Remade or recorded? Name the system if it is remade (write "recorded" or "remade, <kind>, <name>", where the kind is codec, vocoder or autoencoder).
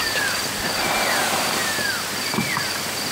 recorded